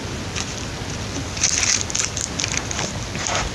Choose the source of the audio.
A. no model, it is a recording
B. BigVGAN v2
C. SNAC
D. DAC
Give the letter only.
A